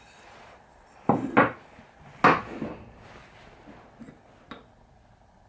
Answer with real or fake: real